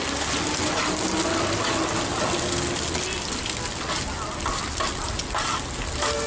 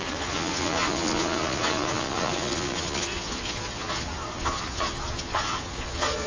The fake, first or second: second